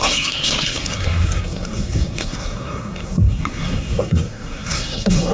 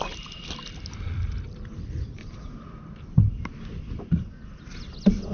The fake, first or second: first